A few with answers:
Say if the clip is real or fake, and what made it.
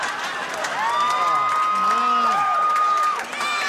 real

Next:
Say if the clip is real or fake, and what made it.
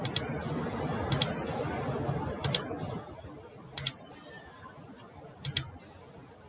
real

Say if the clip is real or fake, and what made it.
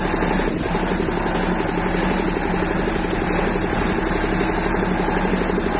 real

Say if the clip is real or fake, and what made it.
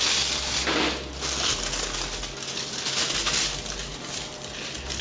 real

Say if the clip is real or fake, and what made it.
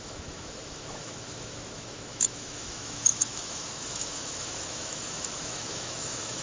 fake, autoencoder, DAC-VAE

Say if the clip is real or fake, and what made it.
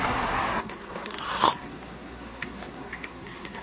fake, codec, SNAC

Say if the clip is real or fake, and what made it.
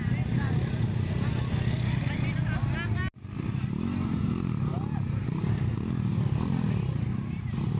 real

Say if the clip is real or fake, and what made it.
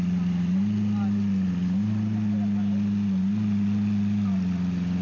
real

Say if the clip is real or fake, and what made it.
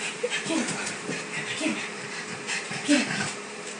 fake, vocoder, BigVGAN v2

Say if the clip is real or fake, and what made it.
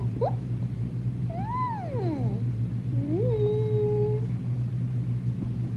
real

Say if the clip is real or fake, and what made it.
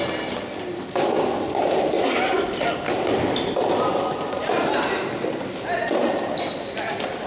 real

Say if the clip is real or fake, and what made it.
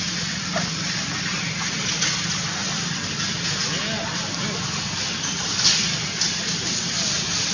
real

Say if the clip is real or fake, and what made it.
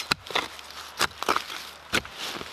real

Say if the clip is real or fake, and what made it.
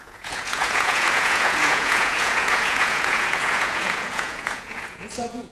fake, vocoder, Vocos